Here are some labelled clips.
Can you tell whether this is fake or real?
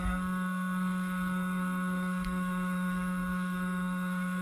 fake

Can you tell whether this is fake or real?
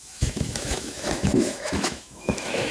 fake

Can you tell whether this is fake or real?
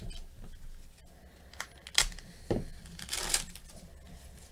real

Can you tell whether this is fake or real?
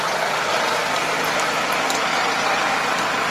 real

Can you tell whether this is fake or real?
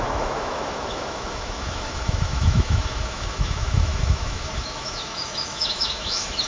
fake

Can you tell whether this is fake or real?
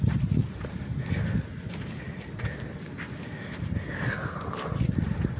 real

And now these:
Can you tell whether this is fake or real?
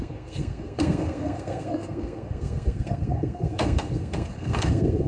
fake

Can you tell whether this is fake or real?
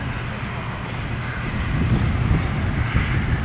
real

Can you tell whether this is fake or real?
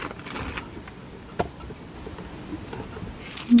real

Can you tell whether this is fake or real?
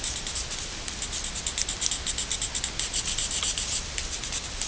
real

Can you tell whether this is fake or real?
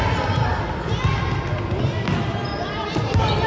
real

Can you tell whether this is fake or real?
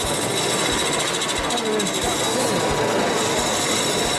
real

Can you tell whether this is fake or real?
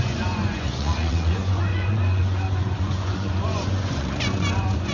fake